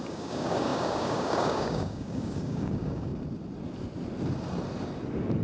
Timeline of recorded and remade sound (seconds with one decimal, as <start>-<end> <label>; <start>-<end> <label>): 0.0-3.1 remade; 3.1-5.4 recorded